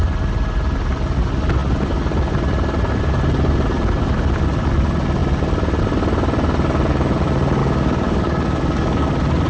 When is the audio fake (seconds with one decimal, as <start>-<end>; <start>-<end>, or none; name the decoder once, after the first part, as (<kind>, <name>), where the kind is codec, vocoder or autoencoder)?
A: 7.6-9.1 (codec, DAC)